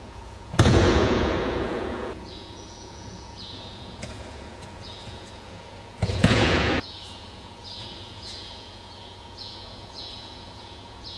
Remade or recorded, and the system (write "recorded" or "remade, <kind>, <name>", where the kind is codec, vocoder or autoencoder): remade, vocoder, Vocos